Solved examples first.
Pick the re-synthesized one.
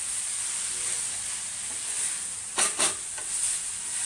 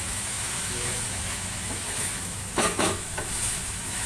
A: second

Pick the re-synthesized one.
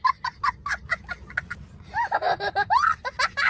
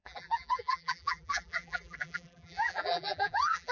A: second